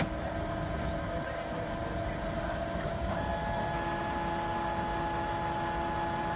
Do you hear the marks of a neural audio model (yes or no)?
no